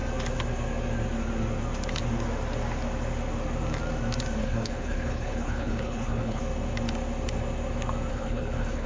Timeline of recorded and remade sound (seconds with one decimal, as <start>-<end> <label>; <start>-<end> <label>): 0.0-4.4 recorded; 4.4-6.4 remade; 6.4-8.1 recorded; 8.1-8.9 remade